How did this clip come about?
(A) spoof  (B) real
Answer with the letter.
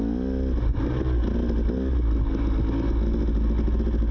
B